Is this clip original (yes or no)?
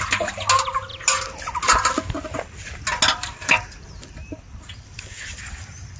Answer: yes